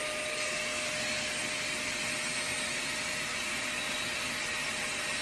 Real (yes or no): yes